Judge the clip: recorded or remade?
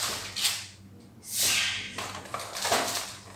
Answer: recorded